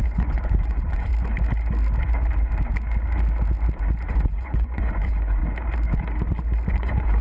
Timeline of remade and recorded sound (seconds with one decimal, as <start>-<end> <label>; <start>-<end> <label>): 0.0-1.1 remade; 1.1-4.1 recorded; 4.1-5.4 remade; 5.4-6.7 recorded; 6.7-7.2 remade

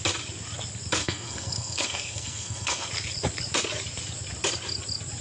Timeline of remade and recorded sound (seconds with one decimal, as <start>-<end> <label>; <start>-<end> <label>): 0.0-1.0 recorded; 1.0-2.9 remade; 2.9-5.2 recorded

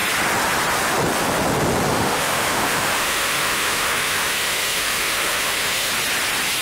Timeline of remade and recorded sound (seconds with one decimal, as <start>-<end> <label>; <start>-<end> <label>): 0.0-1.9 recorded; 1.9-5.9 remade; 5.9-6.6 recorded